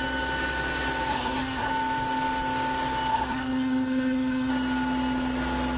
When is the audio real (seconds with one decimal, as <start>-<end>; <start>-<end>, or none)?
0.0-1.1; 1.7-3.1; 4.5-5.8